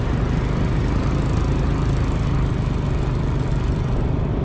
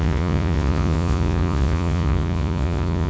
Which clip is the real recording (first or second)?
first